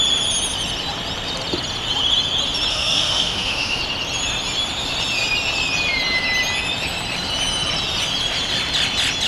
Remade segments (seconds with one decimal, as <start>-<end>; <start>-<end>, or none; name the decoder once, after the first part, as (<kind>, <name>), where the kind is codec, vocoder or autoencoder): 2.7-3.8 (autoencoder, DAC-VAE)